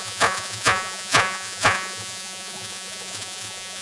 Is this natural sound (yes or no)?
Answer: no